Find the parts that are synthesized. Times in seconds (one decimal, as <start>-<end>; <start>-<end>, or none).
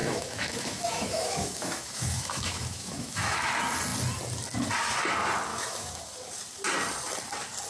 0.0-3.5; 5.5-6.1